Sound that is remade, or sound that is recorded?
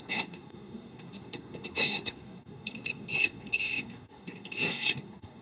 remade